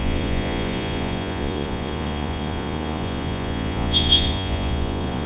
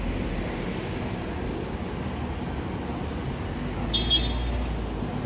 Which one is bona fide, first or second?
second